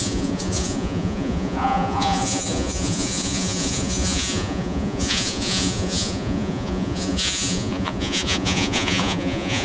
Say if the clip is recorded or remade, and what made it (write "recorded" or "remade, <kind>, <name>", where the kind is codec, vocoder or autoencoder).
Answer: remade, vocoder, Vocos